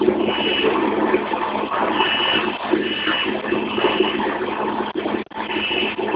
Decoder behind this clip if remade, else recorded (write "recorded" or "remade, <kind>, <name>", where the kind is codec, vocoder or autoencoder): recorded